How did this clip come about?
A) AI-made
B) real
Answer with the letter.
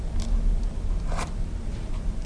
B